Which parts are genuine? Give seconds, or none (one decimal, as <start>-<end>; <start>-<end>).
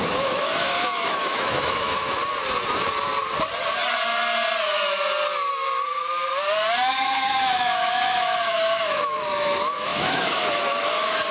2.2-5.5; 6.0-6.9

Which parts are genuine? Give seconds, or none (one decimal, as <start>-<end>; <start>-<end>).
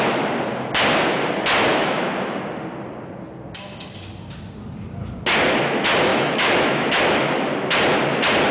0.0-1.7; 2.4-6.1; 7.0-8.5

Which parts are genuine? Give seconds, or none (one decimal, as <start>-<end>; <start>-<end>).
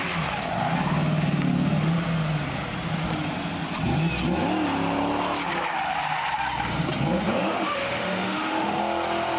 0.0-7.3; 8.8-9.4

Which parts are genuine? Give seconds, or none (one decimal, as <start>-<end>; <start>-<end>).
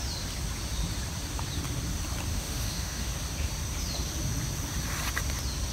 0.0-2.3; 3.1-5.7